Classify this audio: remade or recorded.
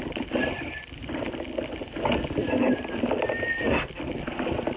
recorded